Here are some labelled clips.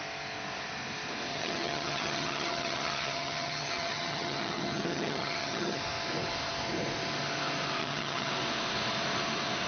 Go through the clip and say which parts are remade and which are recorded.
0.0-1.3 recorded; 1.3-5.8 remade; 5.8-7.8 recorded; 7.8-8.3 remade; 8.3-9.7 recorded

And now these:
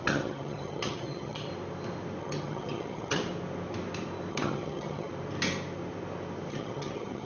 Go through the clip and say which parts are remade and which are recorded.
0.0-1.5 remade; 1.5-2.2 recorded; 2.2-3.2 remade; 3.2-4.3 recorded; 4.3-5.1 remade; 5.1-6.5 recorded; 6.5-7.3 remade

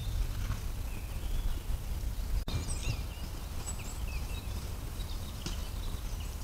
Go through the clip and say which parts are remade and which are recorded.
0.0-3.5 recorded; 3.5-6.4 remade

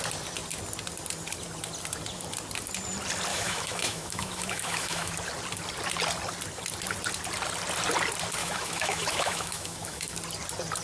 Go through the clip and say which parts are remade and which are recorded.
0.0-3.3 recorded; 3.3-5.1 remade; 5.1-8.4 recorded; 8.4-10.2 remade; 10.2-10.8 recorded

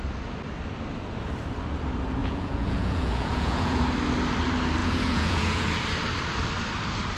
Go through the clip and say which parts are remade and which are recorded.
0.0-2.2 recorded; 2.2-3.8 remade; 3.8-4.8 recorded; 4.8-5.7 remade; 5.7-7.2 recorded